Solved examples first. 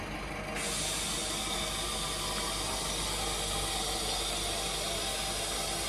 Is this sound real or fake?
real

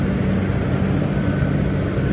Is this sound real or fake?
real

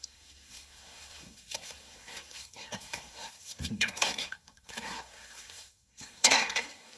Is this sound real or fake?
fake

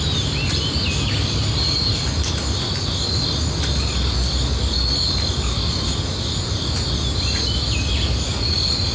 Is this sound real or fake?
real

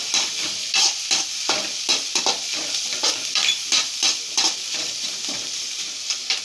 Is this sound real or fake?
fake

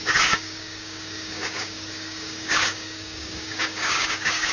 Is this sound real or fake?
fake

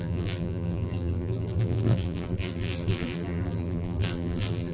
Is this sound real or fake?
fake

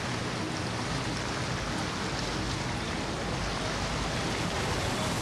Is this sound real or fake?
real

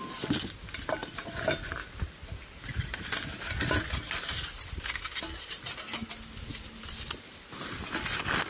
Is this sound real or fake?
real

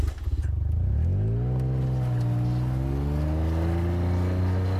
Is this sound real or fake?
real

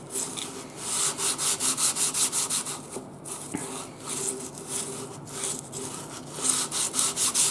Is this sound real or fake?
real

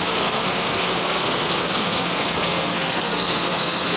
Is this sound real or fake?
fake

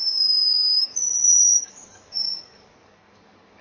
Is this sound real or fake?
fake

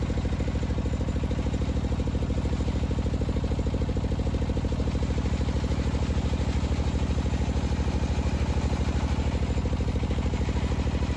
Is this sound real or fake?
real